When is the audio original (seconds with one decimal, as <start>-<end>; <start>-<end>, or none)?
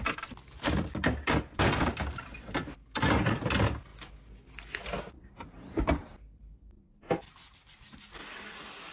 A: 2.6-3.2; 3.9-5.1